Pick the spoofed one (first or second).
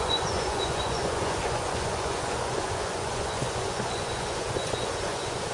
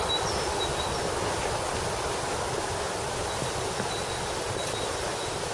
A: first